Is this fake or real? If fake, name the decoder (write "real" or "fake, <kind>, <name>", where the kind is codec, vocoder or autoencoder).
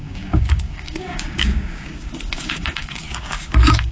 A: fake, codec, DAC